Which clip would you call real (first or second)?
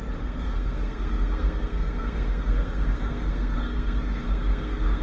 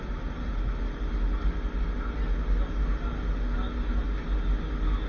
second